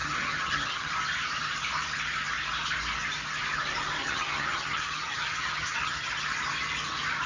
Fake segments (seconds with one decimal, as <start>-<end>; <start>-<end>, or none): 0.0-0.9; 4.0-6.2